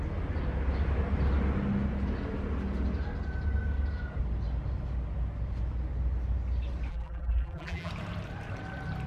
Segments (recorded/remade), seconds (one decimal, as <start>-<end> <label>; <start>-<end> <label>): 0.0-6.9 recorded; 6.9-7.9 remade; 7.9-9.1 recorded